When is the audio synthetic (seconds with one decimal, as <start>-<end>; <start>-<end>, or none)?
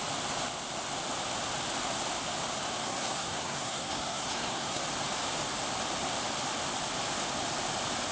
2.8-4.8